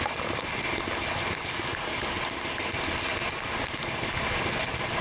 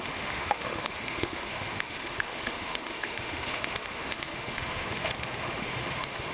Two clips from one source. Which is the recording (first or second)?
first